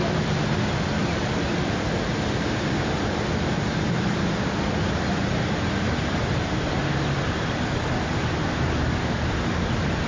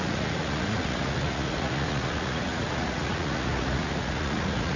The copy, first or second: second